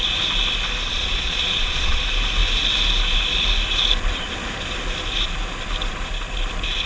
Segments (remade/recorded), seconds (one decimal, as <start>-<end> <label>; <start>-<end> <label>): 0.0-0.9 recorded; 0.9-2.0 remade; 2.0-6.9 recorded